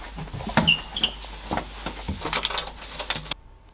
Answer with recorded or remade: recorded